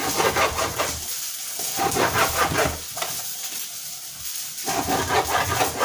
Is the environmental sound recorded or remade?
recorded